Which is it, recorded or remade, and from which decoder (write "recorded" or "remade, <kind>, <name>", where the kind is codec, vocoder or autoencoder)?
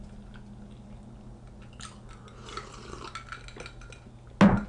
recorded